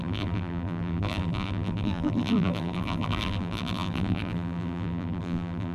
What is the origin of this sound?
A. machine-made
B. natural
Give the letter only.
A